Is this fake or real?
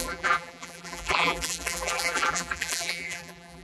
fake